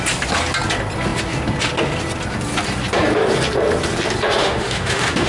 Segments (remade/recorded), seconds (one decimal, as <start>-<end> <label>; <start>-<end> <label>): 0.0-4.4 recorded; 4.4-5.3 remade